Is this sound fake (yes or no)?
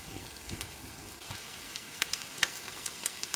yes